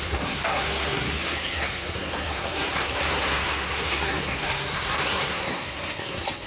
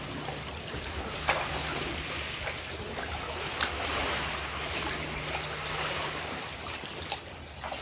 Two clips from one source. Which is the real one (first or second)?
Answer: second